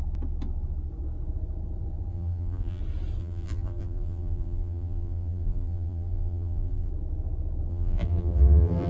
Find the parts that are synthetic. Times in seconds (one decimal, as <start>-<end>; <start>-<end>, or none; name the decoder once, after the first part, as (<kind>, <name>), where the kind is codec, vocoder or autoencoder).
2.1-2.8 (vocoder, BigVGAN v2); 3.2-6.9; 7.7-8.9